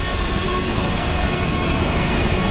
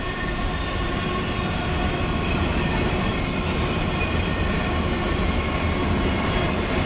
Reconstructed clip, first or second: first